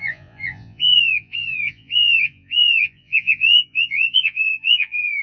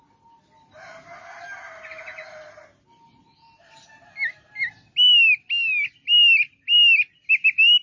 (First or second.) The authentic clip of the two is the second